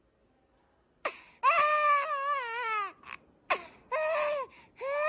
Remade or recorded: recorded